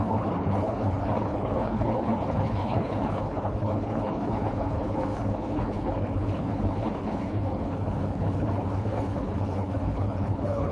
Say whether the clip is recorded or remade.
remade